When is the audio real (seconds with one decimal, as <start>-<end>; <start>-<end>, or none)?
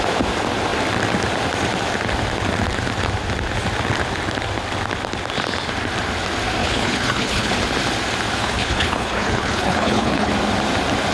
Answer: 0.0-6.6; 7.5-8.4; 10.3-11.1